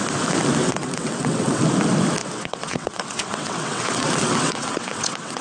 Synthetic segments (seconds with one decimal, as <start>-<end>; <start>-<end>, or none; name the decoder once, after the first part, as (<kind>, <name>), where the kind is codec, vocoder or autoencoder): 0.6-1.6 (vocoder, WaveNeXt); 2.2-5.4